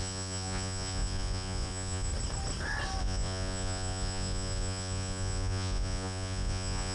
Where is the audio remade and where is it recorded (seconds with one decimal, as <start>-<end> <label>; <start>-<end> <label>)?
0.0-2.1 remade; 2.1-3.0 recorded; 3.0-6.9 remade